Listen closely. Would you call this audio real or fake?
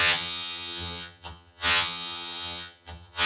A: fake